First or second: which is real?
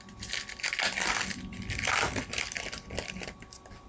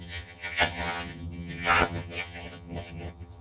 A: first